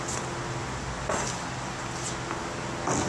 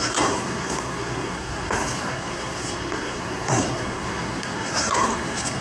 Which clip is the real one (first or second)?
first